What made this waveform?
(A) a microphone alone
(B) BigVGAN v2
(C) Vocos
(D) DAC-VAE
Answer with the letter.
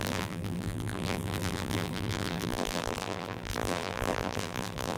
B